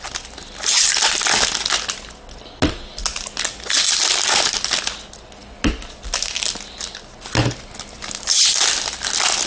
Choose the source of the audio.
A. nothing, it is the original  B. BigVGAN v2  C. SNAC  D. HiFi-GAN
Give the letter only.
A